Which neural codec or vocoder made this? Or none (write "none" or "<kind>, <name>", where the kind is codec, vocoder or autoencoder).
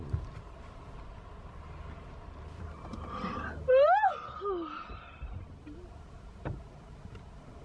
none